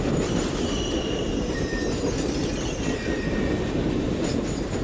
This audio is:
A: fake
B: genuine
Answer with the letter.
B